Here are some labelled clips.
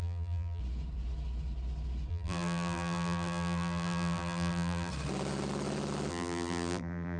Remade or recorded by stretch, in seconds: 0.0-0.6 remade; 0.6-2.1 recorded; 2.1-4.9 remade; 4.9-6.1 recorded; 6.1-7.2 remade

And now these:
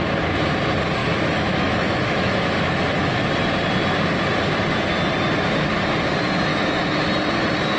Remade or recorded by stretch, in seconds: 0.0-1.0 recorded; 1.0-3.2 remade; 3.2-6.5 recorded; 6.5-7.1 remade; 7.1-7.8 recorded

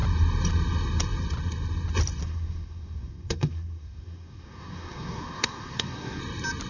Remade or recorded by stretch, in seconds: 0.0-2.2 recorded; 2.2-6.2 remade; 6.2-6.7 recorded

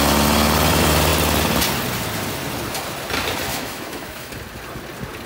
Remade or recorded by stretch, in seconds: 0.0-3.5 recorded; 3.5-4.3 remade; 4.3-5.3 recorded

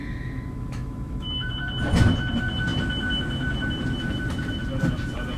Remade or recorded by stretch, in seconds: 0.0-1.5 remade; 1.5-5.4 recorded